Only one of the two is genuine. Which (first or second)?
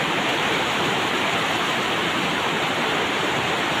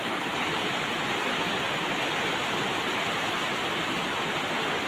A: second